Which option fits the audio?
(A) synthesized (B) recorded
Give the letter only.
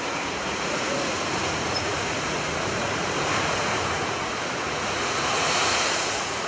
A